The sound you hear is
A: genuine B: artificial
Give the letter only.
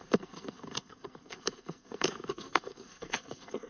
B